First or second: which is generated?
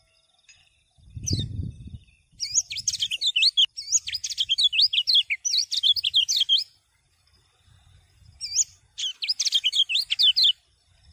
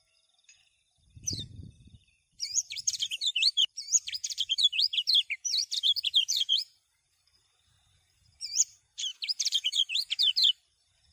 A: second